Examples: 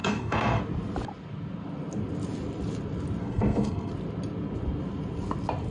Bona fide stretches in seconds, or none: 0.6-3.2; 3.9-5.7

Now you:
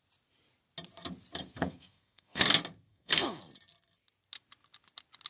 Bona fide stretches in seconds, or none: 0.0-1.4; 2.5-2.9; 3.4-5.3

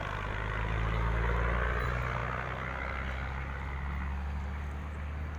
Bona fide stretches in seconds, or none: 0.0-5.4